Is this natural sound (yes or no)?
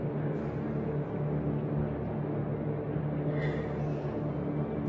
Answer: yes